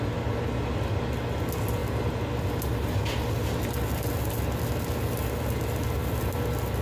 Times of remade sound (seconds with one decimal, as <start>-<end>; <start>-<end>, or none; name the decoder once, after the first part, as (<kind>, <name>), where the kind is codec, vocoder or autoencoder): none